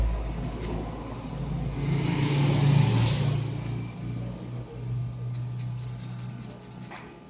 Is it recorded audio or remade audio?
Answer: recorded